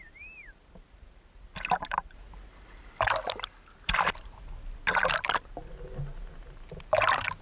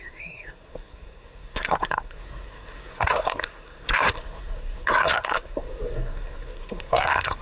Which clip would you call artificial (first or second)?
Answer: second